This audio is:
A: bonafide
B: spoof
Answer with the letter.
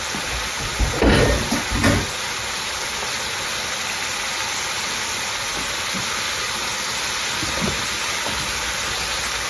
A